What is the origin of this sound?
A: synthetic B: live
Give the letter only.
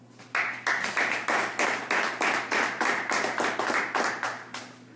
B